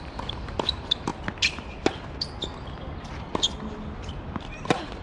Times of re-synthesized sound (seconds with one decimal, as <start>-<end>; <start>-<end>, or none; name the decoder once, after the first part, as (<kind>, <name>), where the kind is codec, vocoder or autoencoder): 0.0-1.1 (vocoder, BigVGAN v2); 4.1-5.0